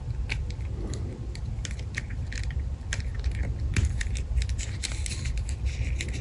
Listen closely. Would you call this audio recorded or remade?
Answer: recorded